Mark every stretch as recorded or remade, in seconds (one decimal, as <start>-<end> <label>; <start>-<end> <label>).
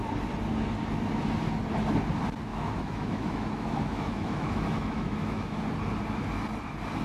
0.0-2.5 recorded; 2.5-5.6 remade; 5.6-7.0 recorded